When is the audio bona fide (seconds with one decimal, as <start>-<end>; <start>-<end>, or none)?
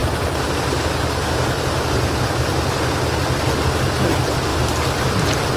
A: 0.0-4.5